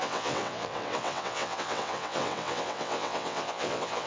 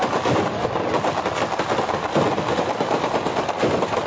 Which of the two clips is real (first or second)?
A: second